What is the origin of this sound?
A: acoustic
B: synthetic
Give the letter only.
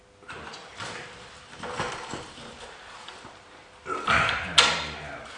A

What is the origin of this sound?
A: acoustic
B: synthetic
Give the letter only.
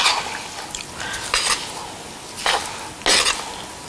A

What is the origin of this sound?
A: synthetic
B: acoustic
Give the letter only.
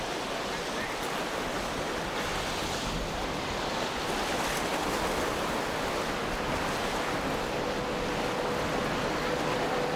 B